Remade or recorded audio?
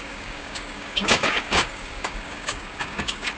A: remade